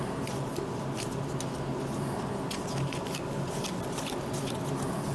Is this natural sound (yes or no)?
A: yes